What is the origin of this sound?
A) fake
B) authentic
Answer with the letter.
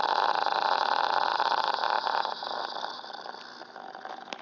B